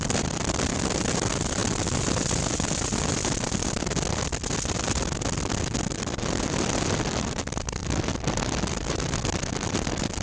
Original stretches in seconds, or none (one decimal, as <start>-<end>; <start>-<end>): 1.6-6.0; 7.8-8.7